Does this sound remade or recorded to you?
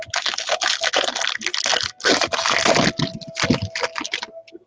recorded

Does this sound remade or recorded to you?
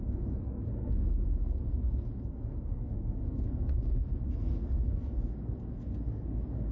remade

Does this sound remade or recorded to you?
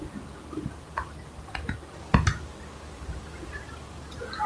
recorded